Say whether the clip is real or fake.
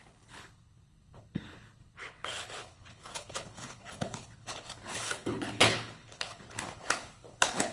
fake